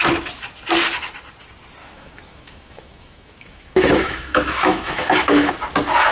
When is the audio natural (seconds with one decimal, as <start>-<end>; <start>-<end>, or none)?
0.0-1.8; 5.5-6.1